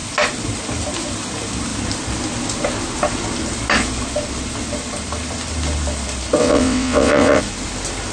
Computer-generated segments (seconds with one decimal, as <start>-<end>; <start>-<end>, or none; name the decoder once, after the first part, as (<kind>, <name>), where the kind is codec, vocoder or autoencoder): 6.4-7.4 (vocoder, WaveNeXt)